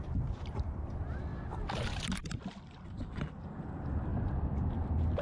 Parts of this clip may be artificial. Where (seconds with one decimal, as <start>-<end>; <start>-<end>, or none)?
0.0-1.3; 2.5-4.1; 4.7-5.2